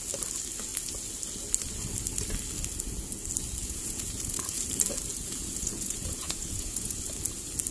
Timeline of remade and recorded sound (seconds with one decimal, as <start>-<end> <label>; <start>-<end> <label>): 0.0-3.6 recorded; 3.6-4.6 remade; 4.6-5.1 recorded; 5.1-7.0 remade; 7.0-7.7 recorded